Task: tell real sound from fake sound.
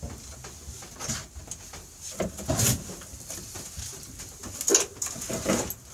real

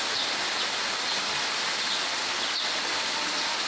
real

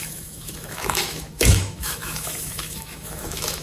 fake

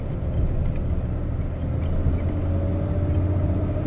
real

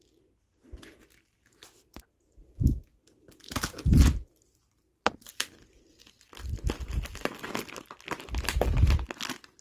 real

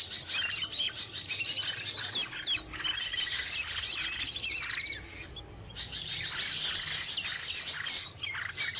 real